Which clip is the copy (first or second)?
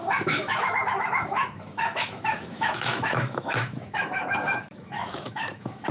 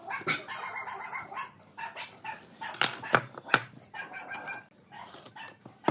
first